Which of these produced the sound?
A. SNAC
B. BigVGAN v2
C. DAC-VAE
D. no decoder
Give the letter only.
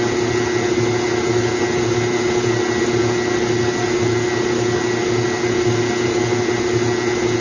D